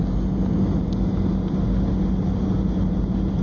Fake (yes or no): no